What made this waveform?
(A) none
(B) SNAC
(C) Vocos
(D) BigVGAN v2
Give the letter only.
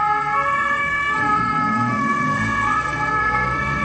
B